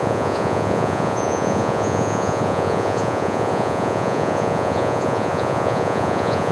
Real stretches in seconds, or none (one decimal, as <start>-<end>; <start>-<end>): none